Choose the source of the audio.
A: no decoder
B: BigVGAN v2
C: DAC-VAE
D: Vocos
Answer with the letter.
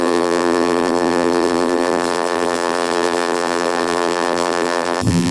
B